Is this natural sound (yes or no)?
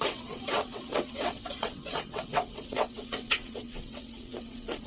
no